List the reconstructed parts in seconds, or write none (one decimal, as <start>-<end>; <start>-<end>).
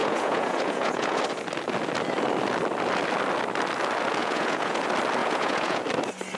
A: 0.0-1.2; 4.2-4.8; 5.2-5.8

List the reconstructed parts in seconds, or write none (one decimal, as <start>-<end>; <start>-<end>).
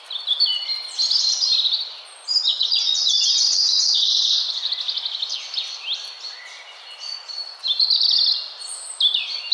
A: 2.5-4.7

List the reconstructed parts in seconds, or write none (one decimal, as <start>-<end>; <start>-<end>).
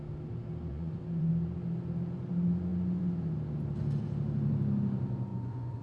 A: 0.7-1.3; 5.3-5.8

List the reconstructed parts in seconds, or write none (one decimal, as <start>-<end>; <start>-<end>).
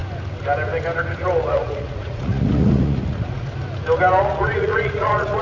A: 1.4-3.5; 4.2-5.4